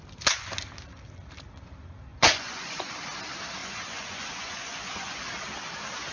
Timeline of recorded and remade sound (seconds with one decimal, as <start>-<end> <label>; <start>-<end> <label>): 0.0-2.1 recorded; 2.1-2.9 remade; 2.9-3.6 recorded; 3.6-5.2 remade; 5.2-6.1 recorded